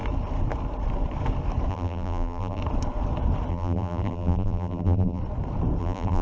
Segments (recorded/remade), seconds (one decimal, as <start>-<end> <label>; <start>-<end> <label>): 0.0-1.7 recorded; 1.7-2.6 remade; 2.6-3.5 recorded; 3.5-5.2 remade; 5.2-5.8 recorded; 5.8-6.2 remade